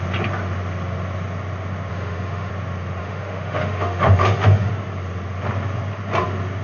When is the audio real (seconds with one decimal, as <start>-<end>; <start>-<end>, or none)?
0.0-1.9; 2.5-3.0; 4.7-6.6